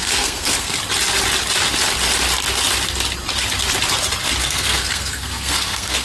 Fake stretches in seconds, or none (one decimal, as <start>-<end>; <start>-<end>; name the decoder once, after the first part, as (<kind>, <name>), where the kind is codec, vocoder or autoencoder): 0.0-0.8 (codec, SNAC); 4.4-6.0